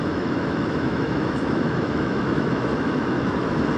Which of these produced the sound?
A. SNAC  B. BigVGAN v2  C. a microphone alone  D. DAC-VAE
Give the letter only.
D